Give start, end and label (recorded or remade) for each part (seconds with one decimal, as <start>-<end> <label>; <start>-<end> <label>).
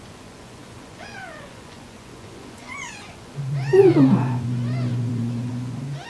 0.0-6.1 remade